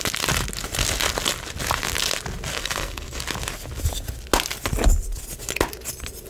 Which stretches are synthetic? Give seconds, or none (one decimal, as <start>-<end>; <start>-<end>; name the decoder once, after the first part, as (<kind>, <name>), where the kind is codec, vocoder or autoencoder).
2.5-3.2 (codec, SNAC)